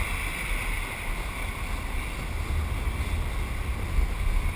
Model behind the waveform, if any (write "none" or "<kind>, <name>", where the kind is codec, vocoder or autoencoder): none